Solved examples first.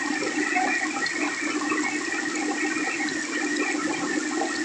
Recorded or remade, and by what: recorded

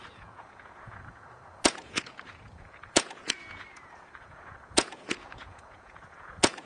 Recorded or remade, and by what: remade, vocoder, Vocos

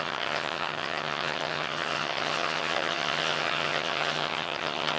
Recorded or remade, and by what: remade, vocoder, HiFi-GAN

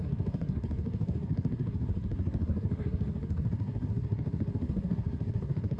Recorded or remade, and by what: remade, codec, SNAC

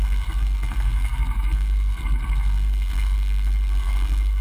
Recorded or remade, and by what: remade, codec, SNAC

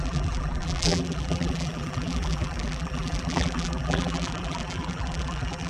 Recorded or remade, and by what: remade, vocoder, BigVGAN v2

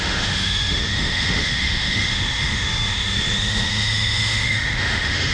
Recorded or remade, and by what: remade, autoencoder, DAC-VAE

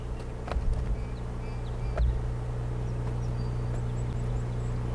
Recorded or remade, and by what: recorded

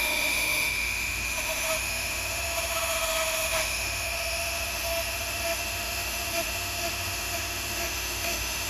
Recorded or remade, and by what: remade, autoencoder, DAC-VAE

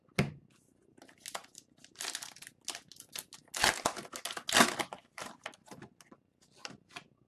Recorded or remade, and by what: recorded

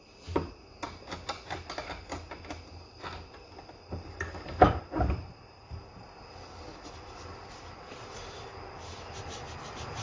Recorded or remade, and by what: recorded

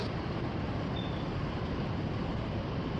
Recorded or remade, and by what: remade, vocoder, BigVGAN v2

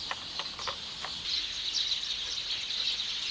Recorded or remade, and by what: recorded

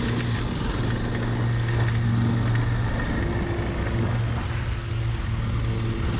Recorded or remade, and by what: recorded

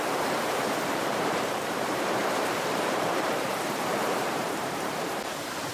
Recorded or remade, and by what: remade, vocoder, BigVGAN v2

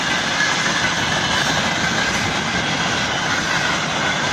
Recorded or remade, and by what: recorded